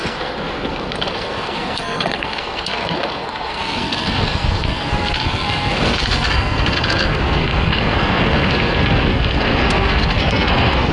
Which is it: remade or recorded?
remade